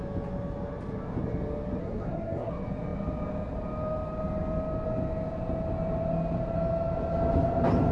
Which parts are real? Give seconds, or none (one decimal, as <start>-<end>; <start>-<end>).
0.0-1.8; 2.5-7.9